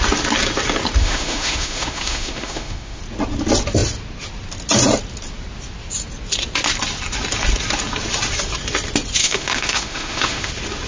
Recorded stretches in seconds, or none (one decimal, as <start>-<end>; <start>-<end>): 0.0-1.0; 3.0-9.2; 10.5-10.9